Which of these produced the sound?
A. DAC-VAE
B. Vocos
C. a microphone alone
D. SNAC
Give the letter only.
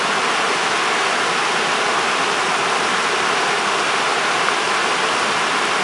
C